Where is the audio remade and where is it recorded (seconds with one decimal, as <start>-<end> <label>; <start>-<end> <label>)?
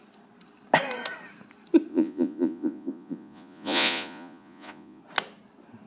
0.0-1.9 recorded; 1.9-5.0 remade; 5.0-5.9 recorded